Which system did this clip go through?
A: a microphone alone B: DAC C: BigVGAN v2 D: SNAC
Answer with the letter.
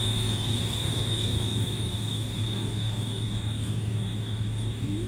B